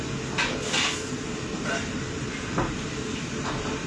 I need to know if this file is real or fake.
real